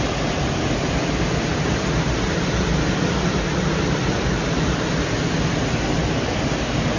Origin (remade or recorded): recorded